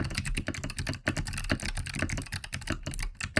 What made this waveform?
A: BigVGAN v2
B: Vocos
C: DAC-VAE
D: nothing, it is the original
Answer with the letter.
D